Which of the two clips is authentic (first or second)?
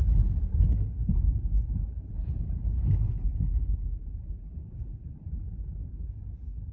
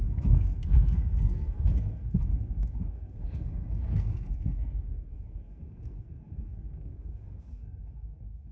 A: first